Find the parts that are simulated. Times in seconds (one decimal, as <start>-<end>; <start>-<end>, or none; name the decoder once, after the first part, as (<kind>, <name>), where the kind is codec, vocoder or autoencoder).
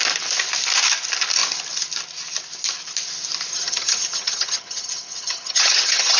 3.5-6.2 (vocoder, HiFi-GAN)